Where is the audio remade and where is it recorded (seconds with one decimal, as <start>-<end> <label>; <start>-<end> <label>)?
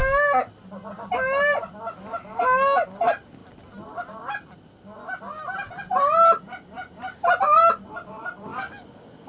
0.0-8.5 recorded; 8.5-9.3 remade